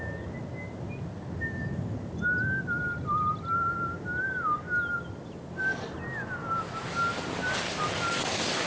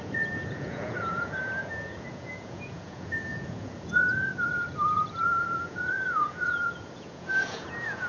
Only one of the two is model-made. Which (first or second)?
second